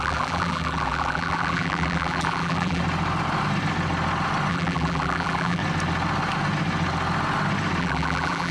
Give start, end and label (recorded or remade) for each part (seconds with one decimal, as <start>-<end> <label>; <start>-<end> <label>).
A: 0.0-2.8 remade; 2.8-4.5 recorded; 4.5-5.6 remade; 5.6-7.8 recorded; 7.8-8.5 remade